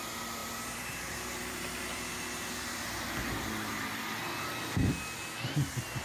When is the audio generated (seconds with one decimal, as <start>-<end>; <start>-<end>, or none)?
0.4-4.0